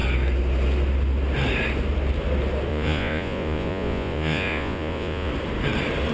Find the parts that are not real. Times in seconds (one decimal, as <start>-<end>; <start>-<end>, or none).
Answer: 2.7-5.3